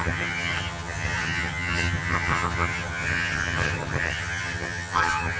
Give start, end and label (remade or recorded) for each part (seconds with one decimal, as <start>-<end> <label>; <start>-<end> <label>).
0.0-5.4 remade